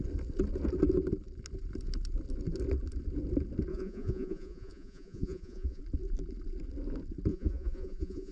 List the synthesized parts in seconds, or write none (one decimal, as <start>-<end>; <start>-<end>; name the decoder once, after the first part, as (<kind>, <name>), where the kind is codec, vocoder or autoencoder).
3.7-5.8 (vocoder, Vocos); 7.3-8.3